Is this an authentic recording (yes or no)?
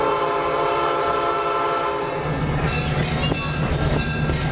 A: yes